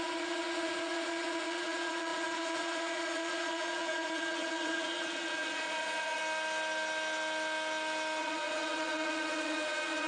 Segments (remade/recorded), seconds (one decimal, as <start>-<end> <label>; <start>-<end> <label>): 0.0-6.2 remade; 6.2-8.2 recorded; 8.2-10.1 remade